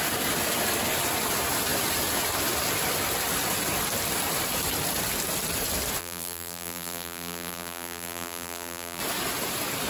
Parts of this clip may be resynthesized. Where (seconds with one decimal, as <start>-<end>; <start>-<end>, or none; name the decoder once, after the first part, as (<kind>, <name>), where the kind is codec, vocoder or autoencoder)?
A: 6.0-9.0 (vocoder, BigVGAN v2)